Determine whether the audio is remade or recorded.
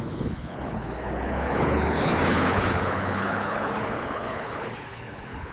remade